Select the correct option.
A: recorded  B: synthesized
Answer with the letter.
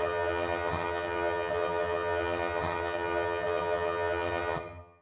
B